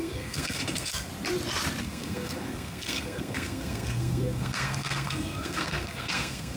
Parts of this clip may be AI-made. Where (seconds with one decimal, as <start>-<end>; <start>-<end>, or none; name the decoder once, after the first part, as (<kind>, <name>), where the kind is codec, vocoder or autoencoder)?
0.0-1.1 (codec, SNAC); 1.8-6.6